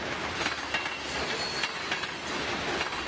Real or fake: real